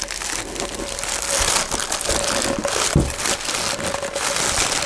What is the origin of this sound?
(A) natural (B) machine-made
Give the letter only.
A